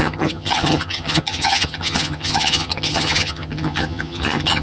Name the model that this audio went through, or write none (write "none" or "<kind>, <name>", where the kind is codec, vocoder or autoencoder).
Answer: vocoder, HiFi-GAN